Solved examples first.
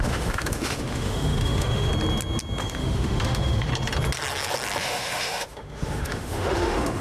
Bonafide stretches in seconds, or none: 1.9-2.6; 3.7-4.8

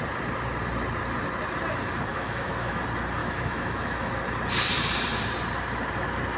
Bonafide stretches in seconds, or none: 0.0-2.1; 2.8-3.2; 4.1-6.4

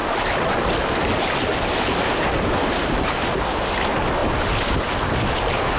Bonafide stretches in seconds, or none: 0.0-5.8

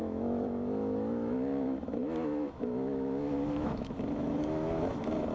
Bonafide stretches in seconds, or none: none